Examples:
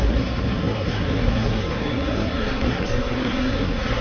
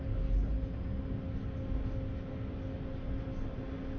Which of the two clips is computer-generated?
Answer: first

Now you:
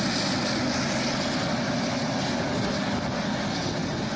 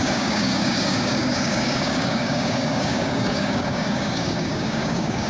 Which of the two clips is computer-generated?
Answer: second